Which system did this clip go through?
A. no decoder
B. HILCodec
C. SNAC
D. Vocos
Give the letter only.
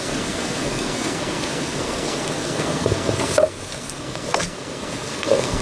C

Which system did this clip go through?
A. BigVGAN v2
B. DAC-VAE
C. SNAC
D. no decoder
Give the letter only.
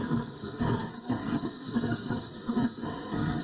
C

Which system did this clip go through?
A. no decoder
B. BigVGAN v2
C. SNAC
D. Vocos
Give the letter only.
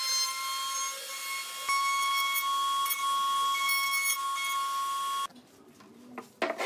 A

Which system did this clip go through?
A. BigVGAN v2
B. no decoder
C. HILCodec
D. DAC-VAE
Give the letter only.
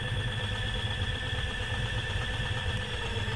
B